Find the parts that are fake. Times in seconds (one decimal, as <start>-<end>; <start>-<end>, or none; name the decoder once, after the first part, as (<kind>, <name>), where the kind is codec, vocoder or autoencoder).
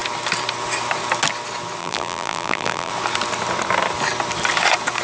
1.8-2.9 (vocoder, BigVGAN v2)